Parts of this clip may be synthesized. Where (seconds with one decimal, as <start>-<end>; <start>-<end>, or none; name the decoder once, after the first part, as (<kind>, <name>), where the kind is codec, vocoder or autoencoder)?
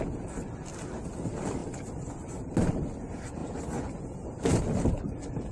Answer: none